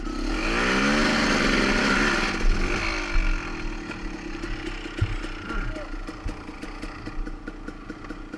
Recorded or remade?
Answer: recorded